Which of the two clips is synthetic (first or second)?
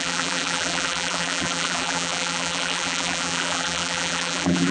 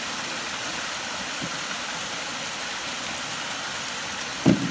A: first